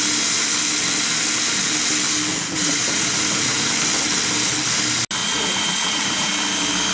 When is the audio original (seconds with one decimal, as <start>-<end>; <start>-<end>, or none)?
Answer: 0.0-2.3; 3.7-5.2; 6.3-6.9